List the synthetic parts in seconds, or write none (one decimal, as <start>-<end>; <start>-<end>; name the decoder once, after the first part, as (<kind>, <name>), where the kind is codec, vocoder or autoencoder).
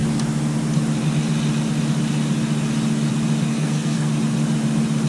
3.5-4.1 (codec, SNAC)